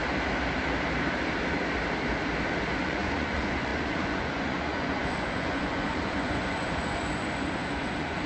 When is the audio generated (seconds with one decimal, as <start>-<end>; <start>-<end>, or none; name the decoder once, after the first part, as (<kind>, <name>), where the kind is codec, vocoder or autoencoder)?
2.8-8.3 (vocoder, Vocos)